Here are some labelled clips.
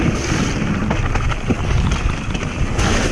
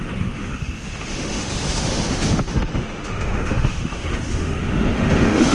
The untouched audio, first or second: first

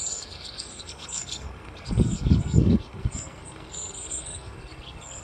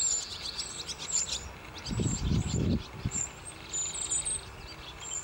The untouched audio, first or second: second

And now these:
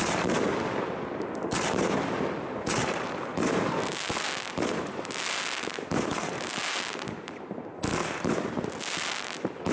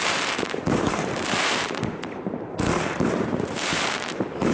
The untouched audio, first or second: first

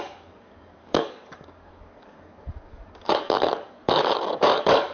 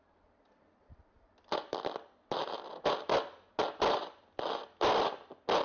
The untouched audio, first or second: second